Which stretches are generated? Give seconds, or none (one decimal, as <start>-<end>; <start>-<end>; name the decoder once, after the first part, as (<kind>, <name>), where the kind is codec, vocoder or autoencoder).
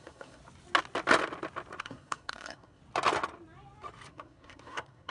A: 0.0-0.4 (codec, SNAC); 1.8-2.8; 4.1-5.1